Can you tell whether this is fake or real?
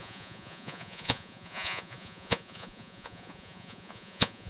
fake